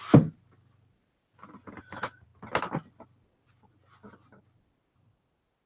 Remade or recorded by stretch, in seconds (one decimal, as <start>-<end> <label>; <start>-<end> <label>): 0.0-5.7 recorded